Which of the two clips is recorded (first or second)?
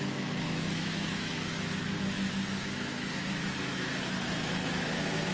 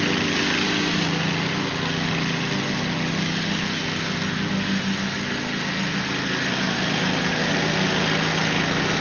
second